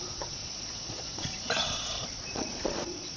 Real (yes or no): no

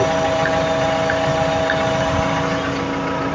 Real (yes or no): yes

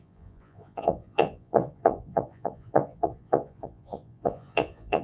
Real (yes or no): no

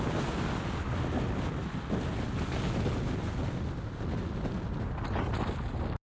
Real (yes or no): yes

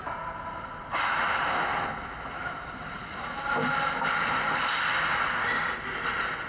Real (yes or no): yes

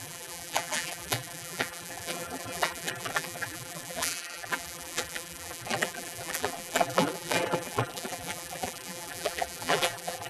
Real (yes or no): no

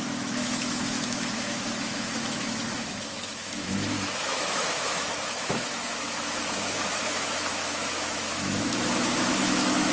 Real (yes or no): no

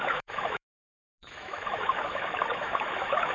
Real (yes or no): no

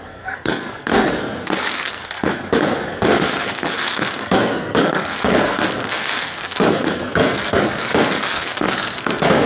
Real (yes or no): no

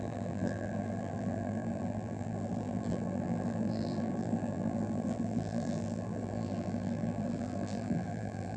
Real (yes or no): no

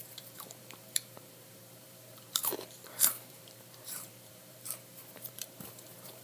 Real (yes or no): no